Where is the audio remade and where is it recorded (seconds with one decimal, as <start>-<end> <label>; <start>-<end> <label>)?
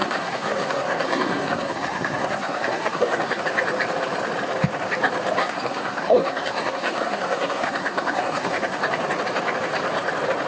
0.0-3.4 remade; 3.4-5.4 recorded; 5.4-8.8 remade; 8.8-10.5 recorded